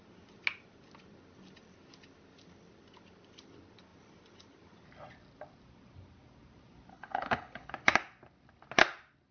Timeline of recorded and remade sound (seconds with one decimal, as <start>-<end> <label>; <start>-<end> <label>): 0.0-6.9 recorded; 6.9-7.7 remade; 7.7-9.3 recorded